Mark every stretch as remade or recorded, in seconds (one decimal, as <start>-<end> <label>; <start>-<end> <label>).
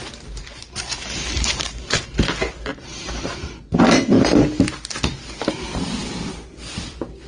0.0-2.0 remade; 2.0-2.7 recorded; 2.7-3.5 remade; 3.5-7.3 recorded